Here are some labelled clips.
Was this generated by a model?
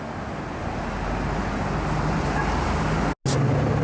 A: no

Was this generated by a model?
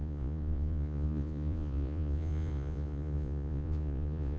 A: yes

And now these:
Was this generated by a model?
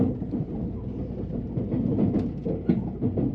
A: no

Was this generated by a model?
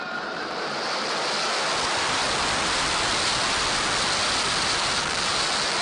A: no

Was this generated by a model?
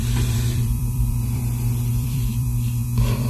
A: yes